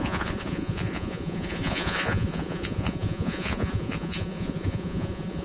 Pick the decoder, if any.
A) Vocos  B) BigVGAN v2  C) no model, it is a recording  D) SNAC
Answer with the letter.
A